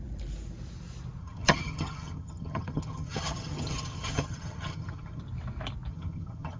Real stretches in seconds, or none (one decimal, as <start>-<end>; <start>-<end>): 0.0-1.2; 5.2-5.9